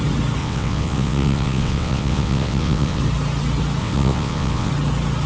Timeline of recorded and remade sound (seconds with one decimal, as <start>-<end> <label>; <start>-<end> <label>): 0.0-0.4 recorded; 0.4-3.0 remade; 3.0-3.8 recorded; 3.8-4.7 remade; 4.7-5.3 recorded